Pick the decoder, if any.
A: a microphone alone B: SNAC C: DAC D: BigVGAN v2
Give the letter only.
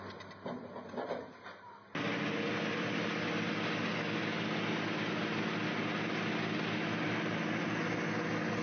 A